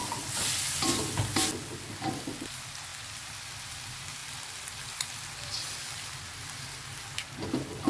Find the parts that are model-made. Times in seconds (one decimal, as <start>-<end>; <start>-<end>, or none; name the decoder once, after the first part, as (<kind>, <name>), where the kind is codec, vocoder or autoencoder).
none